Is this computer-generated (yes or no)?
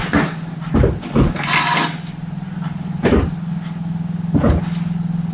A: no